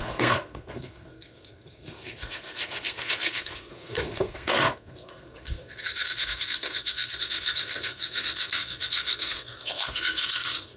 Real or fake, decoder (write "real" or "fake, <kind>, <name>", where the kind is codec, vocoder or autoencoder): fake, codec, SNAC